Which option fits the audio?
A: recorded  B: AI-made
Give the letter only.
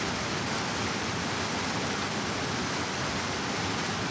A